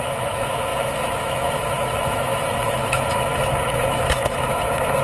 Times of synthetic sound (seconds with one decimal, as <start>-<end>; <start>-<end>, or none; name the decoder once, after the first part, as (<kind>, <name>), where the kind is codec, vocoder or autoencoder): 0.0-5.0 (autoencoder, DAC-VAE)